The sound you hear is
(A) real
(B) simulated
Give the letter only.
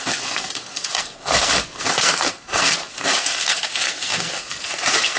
B